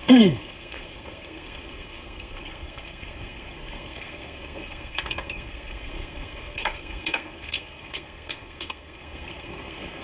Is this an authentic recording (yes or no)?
no